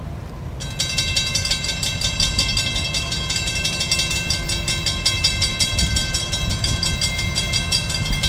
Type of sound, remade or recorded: recorded